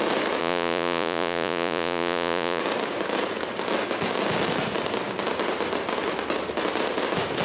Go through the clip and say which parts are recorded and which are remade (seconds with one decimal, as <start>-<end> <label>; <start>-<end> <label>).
0.0-0.4 recorded; 0.4-2.6 remade; 2.6-7.4 recorded